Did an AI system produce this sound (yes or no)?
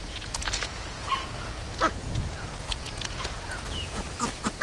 yes